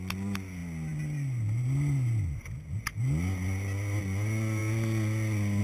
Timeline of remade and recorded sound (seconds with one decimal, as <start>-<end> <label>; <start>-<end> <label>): 0.0-5.6 recorded